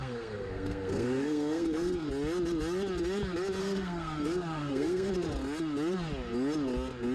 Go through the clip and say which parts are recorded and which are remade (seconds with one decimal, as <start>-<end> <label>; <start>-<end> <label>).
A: 0.0-2.1 remade; 2.1-3.6 recorded; 3.6-5.1 remade; 5.1-7.1 recorded